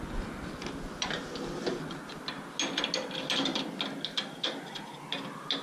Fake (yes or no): no